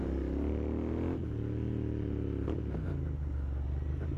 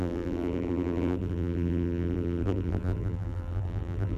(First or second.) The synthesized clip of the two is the second